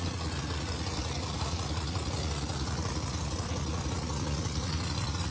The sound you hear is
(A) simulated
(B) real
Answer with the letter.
A